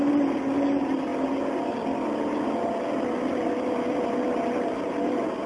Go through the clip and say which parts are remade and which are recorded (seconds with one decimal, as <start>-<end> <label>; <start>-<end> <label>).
0.0-5.5 recorded